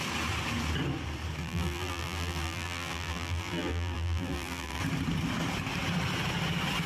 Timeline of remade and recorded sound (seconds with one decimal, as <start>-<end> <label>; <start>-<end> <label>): 0.0-1.4 recorded; 1.4-4.8 remade; 4.8-6.9 recorded